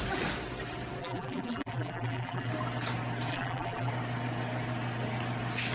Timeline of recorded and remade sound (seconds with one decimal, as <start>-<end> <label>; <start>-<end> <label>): 0.0-1.0 recorded; 1.0-2.5 remade; 2.5-3.3 recorded; 3.3-3.9 remade; 3.9-5.7 recorded

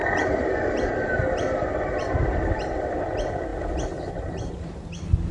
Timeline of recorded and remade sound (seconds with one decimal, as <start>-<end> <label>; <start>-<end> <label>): 0.0-3.0 remade; 3.0-3.5 recorded; 3.5-4.7 remade; 4.7-5.3 recorded

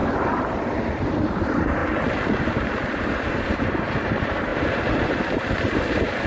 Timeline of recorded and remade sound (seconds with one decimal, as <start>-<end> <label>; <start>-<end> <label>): 0.0-1.8 remade; 1.8-2.4 recorded; 2.4-6.3 remade

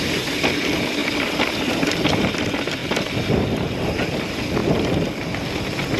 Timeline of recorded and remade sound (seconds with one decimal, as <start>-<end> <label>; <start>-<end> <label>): 0.0-2.8 remade; 2.8-3.7 recorded; 3.7-6.0 remade

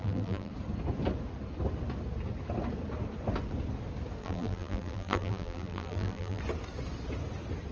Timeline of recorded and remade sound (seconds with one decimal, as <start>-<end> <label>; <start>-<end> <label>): 0.0-0.5 remade; 0.5-4.2 recorded; 4.2-6.4 remade; 6.4-7.7 recorded

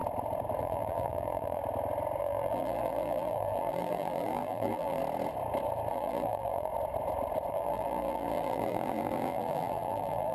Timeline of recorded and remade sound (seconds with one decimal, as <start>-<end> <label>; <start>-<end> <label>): 0.0-0.6 recorded; 0.6-1.6 remade; 1.6-2.2 recorded; 2.2-5.0 remade; 5.0-5.9 recorded; 5.9-6.7 remade; 6.7-7.5 recorded; 7.5-10.3 remade

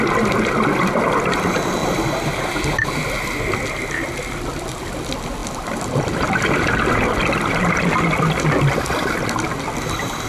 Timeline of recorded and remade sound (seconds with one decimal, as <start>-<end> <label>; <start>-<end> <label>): 0.0-10.3 recorded